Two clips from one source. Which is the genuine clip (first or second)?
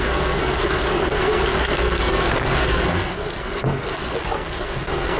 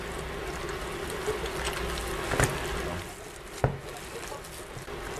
second